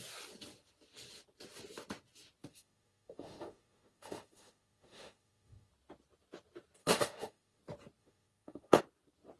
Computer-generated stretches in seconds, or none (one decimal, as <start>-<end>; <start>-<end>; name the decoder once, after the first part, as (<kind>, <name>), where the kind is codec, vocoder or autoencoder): 2.5-5.7 (autoencoder, DAC-VAE); 6.8-7.6; 8.0-8.8